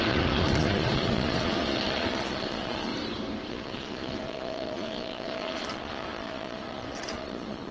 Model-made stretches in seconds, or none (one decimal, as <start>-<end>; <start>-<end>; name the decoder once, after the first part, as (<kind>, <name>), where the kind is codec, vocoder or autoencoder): 0.0-2.9 (vocoder, Vocos); 3.5-7.7